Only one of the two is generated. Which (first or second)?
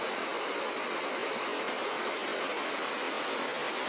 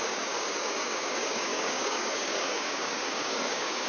second